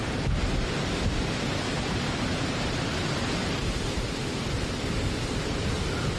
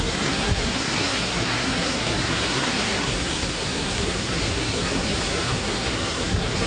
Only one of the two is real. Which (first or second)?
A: first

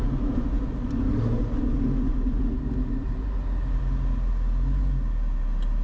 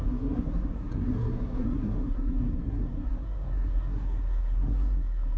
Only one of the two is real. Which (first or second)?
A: first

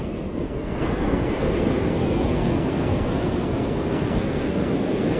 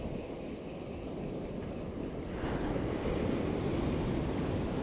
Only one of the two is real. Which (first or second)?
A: second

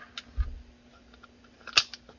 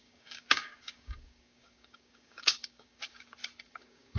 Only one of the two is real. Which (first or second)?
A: first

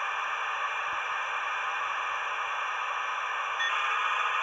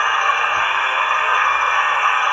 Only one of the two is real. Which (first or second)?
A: first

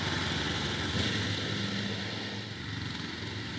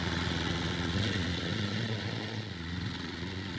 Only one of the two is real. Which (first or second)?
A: first